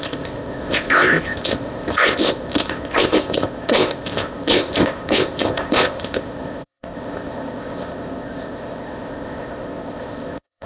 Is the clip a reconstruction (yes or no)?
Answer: yes